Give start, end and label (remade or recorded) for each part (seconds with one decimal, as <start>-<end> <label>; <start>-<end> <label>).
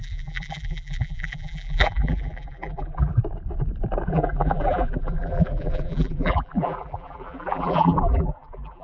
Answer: 0.0-3.2 remade; 3.2-4.1 recorded; 4.1-8.8 remade